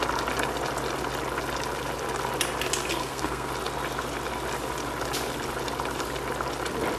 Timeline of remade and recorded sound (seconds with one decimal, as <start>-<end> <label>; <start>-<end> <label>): 0.0-3.0 recorded; 3.0-3.5 remade; 3.5-7.0 recorded